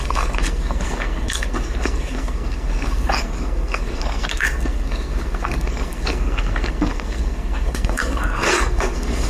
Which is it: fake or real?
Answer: fake